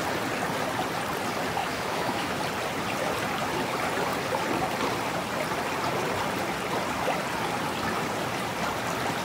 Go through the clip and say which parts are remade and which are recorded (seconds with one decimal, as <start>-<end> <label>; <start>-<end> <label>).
0.0-1.6 recorded; 1.6-2.4 remade; 2.4-9.2 recorded